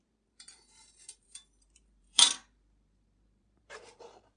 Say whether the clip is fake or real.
fake